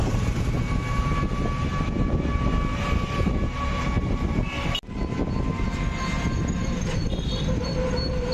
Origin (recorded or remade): recorded